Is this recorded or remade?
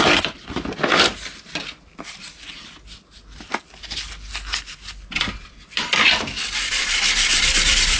recorded